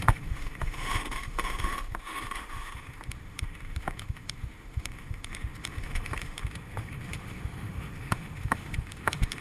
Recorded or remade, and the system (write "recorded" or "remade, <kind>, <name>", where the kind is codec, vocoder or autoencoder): remade, autoencoder, DAC-VAE